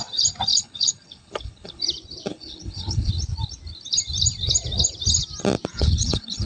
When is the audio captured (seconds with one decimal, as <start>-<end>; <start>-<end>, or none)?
0.0-0.5; 1.8-2.3; 3.1-5.7